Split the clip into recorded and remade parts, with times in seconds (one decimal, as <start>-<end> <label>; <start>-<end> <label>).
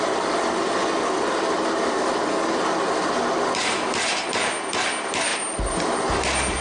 0.0-5.3 recorded; 5.3-5.8 remade; 5.8-6.6 recorded